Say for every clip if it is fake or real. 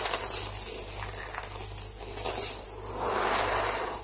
real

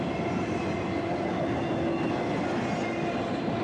real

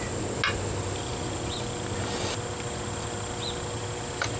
real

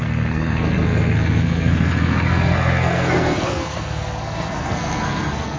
fake